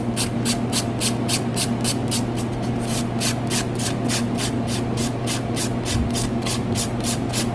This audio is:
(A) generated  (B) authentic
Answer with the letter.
B